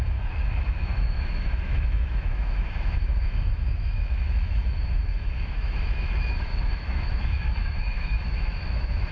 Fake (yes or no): yes